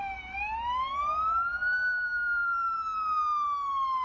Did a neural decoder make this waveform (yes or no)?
no